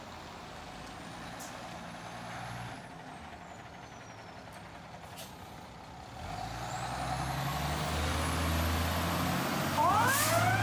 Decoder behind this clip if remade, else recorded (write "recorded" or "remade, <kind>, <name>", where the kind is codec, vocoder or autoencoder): recorded